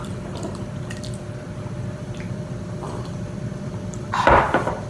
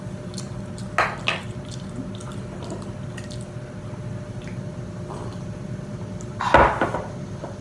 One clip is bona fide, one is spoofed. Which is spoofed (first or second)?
first